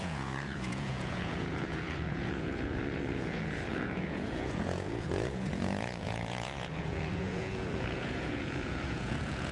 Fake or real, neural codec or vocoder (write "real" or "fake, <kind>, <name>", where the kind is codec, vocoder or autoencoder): fake, vocoder, Vocos